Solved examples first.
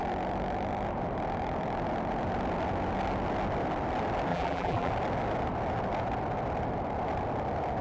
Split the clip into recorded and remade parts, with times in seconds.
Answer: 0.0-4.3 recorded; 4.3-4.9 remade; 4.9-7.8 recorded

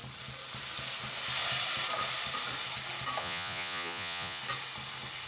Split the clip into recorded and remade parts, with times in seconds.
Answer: 0.0-3.2 recorded; 3.2-4.4 remade; 4.4-5.3 recorded